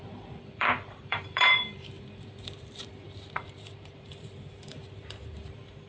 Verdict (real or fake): fake